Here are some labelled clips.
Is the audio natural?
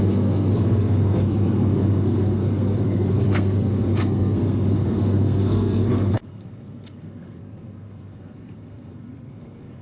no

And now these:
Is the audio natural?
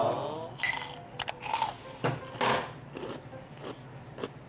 yes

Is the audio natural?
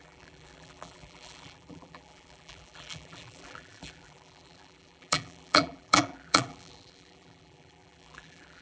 no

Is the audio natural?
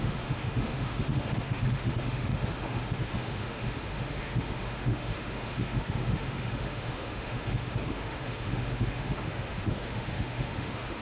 no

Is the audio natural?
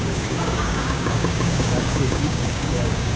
no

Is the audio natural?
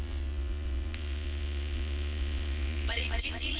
no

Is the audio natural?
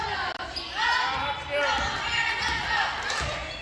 yes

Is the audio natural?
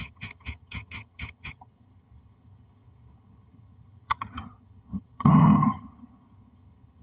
no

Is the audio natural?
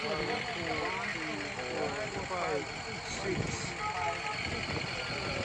yes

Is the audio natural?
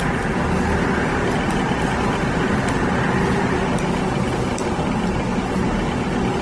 yes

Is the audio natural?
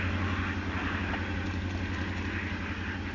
yes